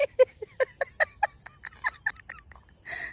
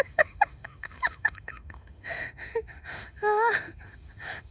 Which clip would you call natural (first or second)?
first